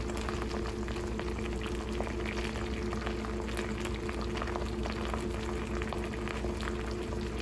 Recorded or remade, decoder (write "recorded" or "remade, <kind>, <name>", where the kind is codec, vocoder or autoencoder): recorded